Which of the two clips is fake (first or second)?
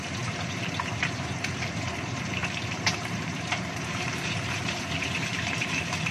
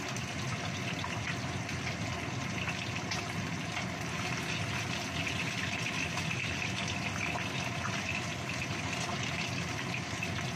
first